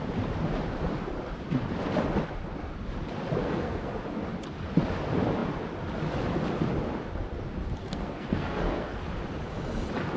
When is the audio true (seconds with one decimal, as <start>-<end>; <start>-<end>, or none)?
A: 0.0-3.4; 3.9-7.8; 9.0-10.2